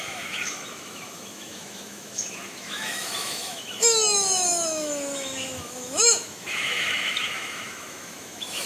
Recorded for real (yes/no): no